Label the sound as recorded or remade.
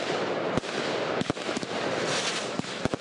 recorded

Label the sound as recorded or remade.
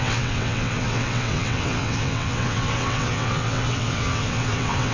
remade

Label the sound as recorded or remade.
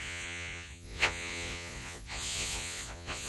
remade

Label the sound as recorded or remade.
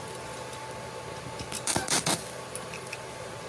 recorded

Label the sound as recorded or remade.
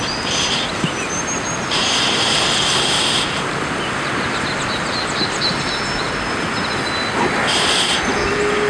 recorded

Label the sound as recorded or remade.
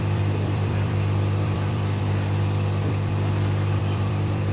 remade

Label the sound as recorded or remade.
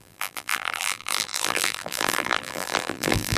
remade